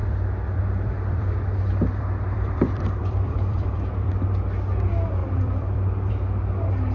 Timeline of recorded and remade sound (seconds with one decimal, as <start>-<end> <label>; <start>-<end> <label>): 0.0-4.1 remade; 4.1-5.2 recorded; 5.2-6.1 remade; 6.1-6.9 recorded